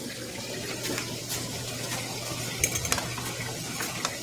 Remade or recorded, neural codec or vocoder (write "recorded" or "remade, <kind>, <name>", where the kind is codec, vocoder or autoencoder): recorded